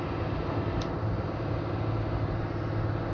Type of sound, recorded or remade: recorded